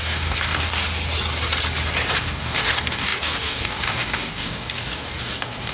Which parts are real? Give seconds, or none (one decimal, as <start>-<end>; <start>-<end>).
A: 0.7-2.2